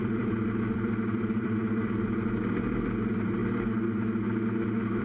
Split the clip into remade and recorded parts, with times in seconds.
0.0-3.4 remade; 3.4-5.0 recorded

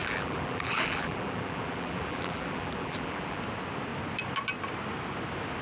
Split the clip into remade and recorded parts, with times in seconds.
0.0-3.4 remade; 3.4-5.6 recorded

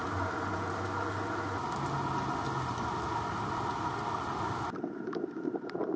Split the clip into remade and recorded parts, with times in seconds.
0.0-0.5 remade; 0.5-4.1 recorded; 4.1-6.0 remade

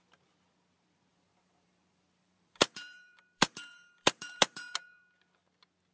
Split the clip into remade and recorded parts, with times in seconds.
0.0-1.1 recorded; 1.1-4.6 remade; 4.6-5.9 recorded

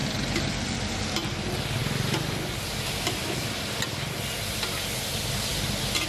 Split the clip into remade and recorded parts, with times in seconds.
0.0-6.1 recorded

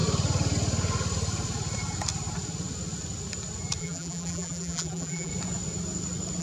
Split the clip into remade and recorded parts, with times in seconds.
0.0-3.8 recorded; 3.8-5.3 remade; 5.3-6.4 recorded